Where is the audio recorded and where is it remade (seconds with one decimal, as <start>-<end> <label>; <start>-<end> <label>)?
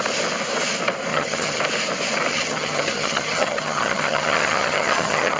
0.0-1.1 recorded; 1.1-1.6 remade; 1.6-2.3 recorded; 2.3-5.4 remade